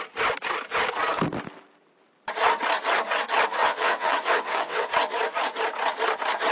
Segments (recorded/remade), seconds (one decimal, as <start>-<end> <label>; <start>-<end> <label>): 0.0-3.6 recorded; 3.6-4.9 remade; 4.9-6.5 recorded